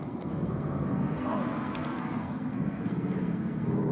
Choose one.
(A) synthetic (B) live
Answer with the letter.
A